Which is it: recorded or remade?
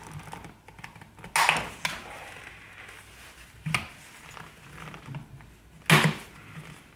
recorded